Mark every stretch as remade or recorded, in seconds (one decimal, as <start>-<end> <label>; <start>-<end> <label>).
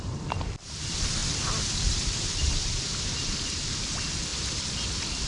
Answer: 0.0-1.2 remade; 1.2-2.4 recorded; 2.4-5.3 remade